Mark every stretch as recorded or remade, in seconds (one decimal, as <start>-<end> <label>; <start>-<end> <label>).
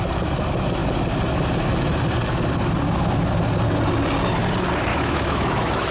0.0-4.9 recorded; 4.9-5.9 remade